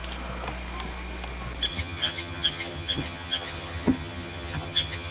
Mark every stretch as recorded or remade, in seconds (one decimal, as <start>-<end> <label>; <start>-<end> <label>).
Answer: 0.0-1.7 recorded; 1.7-5.1 remade